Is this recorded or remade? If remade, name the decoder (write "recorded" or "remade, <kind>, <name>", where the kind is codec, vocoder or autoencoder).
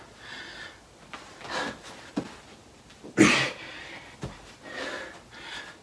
recorded